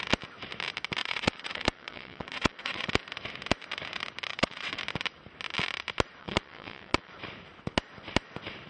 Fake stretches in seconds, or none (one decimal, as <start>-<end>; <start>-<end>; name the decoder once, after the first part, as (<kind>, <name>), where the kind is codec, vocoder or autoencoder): 1.0-2.9 (vocoder, WaveNeXt); 4.3-4.8; 6.2-7.1